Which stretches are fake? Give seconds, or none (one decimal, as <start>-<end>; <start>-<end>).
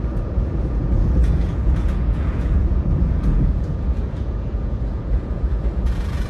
0.0-6.3